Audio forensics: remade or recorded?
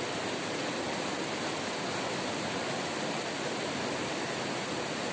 recorded